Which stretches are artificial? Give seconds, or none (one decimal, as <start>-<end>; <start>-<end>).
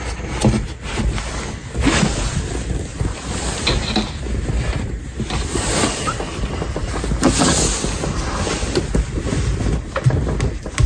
2.9-3.4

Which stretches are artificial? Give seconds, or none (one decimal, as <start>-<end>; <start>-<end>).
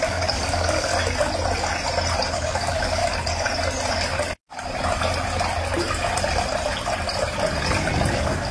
0.0-0.9; 2.3-3.0; 8.1-8.5